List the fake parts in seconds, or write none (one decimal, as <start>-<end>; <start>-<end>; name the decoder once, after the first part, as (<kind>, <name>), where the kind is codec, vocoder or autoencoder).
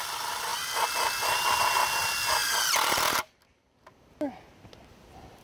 none